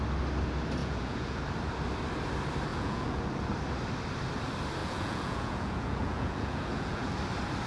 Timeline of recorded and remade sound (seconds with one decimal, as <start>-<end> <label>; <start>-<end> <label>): 0.0-0.8 recorded; 0.8-1.4 remade; 1.4-2.7 recorded; 2.7-3.2 remade; 3.2-4.8 recorded; 4.8-7.1 remade; 7.1-7.7 recorded